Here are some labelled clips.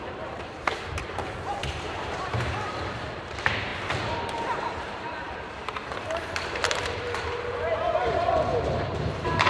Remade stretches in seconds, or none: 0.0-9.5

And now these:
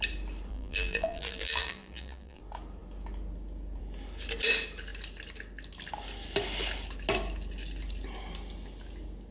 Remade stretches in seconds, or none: 0.5-2.4